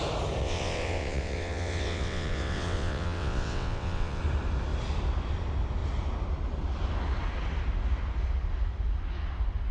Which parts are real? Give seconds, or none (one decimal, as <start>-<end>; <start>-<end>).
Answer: 0.0-0.4; 4.2-9.7